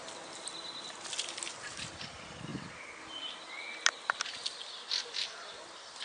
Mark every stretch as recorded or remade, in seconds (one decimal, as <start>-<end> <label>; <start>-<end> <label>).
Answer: 0.0-0.8 recorded; 0.8-2.5 remade; 2.5-5.2 recorded; 5.2-6.0 remade